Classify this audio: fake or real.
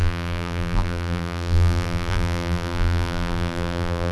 fake